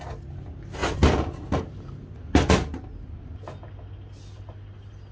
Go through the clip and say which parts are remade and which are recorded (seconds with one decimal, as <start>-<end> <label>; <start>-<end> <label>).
0.0-5.1 recorded